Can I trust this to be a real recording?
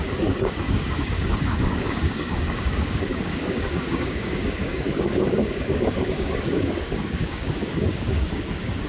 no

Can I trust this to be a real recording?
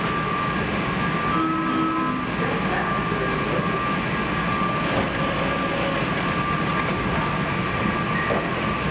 yes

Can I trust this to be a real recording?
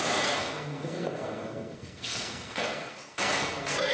no